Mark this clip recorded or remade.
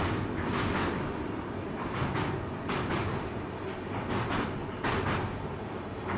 recorded